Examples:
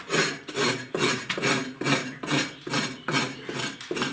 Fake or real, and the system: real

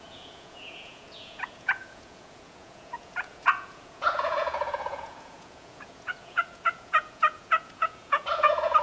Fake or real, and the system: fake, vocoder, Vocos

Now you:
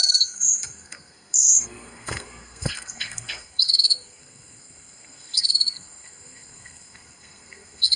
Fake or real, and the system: fake, codec, SNAC